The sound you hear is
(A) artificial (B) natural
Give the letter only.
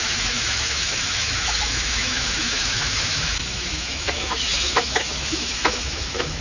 A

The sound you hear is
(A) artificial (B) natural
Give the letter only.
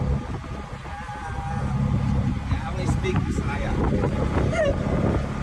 B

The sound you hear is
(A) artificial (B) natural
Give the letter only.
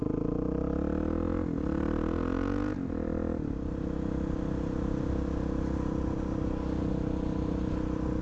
B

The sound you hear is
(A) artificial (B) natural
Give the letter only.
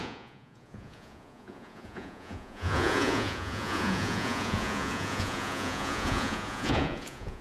A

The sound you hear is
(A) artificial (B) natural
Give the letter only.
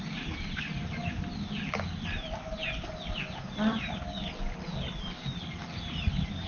B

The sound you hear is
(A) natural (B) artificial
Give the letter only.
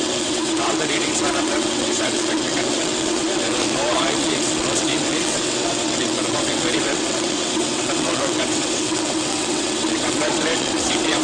B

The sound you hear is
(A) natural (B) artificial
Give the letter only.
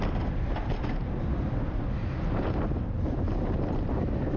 A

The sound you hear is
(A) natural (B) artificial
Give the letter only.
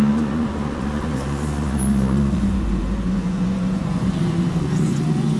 B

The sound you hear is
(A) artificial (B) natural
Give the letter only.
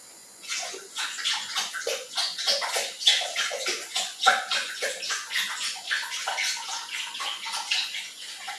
A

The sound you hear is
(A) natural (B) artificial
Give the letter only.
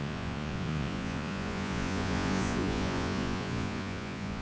B